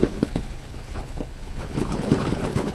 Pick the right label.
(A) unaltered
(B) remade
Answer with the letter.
B